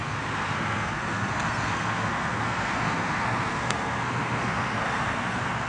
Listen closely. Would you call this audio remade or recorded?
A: remade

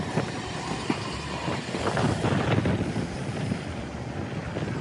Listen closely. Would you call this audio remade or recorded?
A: recorded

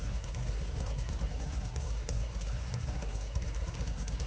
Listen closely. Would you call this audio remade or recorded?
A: remade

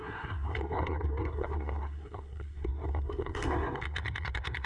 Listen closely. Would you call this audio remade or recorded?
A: remade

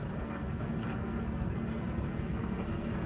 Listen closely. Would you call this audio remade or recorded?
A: remade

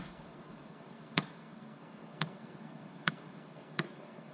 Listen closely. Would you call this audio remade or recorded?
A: remade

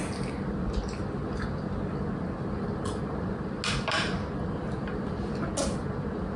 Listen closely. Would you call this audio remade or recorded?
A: recorded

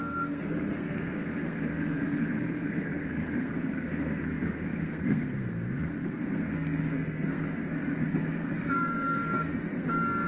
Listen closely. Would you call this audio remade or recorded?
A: remade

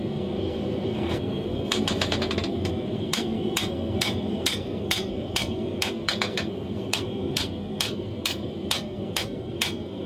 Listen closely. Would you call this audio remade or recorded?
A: remade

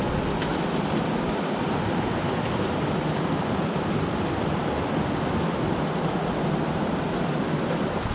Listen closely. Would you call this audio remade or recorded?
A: recorded